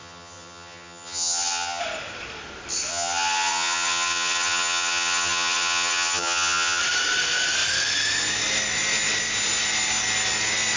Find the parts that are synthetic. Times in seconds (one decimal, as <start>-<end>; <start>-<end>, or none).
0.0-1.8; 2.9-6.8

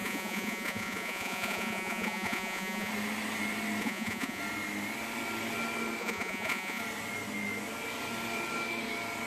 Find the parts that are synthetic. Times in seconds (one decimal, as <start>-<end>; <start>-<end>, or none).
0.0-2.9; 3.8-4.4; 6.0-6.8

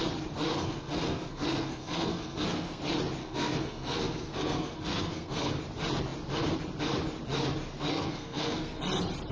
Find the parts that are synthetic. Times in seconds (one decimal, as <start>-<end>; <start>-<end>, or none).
0.5-2.8; 3.2-5.6; 7.9-8.8

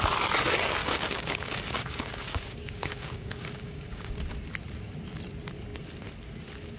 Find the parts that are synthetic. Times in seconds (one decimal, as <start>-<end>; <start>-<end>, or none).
0.8-4.1

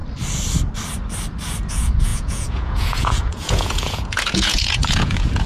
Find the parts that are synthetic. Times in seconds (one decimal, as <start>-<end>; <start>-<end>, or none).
1.7-5.5

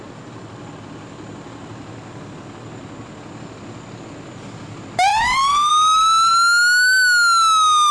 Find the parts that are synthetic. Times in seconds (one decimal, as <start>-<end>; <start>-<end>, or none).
5.1-5.7